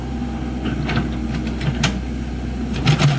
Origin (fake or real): real